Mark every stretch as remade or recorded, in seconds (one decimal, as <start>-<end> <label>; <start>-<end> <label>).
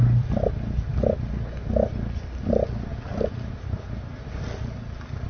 0.0-5.3 recorded